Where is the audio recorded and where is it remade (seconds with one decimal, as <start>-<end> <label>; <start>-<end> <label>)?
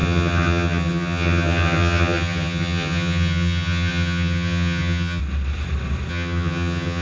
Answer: 0.0-5.2 remade; 5.2-6.1 recorded; 6.1-7.0 remade